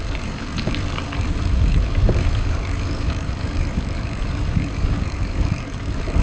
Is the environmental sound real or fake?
fake